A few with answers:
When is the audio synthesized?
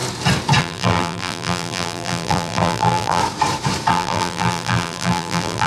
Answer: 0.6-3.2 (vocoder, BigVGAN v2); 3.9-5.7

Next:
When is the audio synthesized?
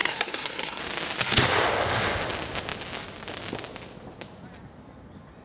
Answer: 0.0-0.8 (codec, SNAC)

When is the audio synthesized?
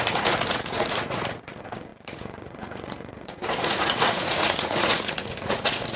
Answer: 0.0-6.0 (vocoder, Vocos)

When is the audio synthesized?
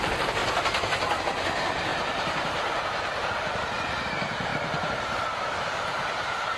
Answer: 0.0-0.4 (vocoder, BigVGAN v2); 1.2-6.6